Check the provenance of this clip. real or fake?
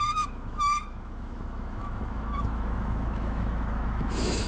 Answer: fake